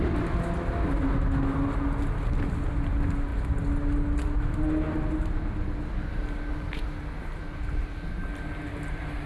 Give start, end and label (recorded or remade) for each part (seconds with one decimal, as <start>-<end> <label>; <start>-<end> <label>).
0.0-9.3 recorded